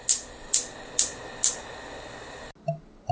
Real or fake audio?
real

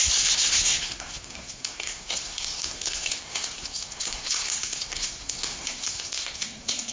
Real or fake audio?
fake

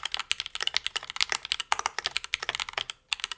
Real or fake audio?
real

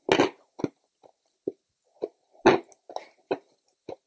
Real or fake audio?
real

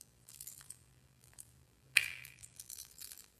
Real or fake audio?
fake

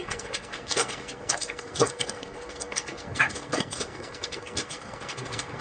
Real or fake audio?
fake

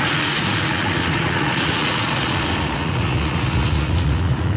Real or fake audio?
fake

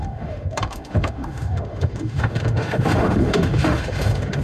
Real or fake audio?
fake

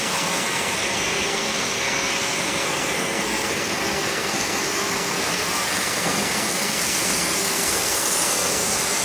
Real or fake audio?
fake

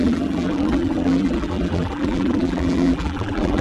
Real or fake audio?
fake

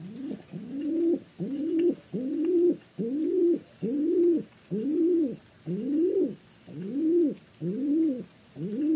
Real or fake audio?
real